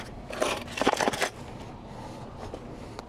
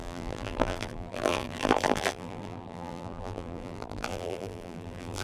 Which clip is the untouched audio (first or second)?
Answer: first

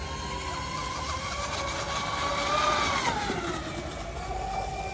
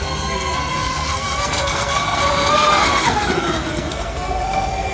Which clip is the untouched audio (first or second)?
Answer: first